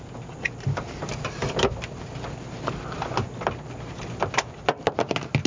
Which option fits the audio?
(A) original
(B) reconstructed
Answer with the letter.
A